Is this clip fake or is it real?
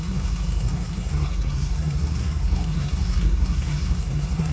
fake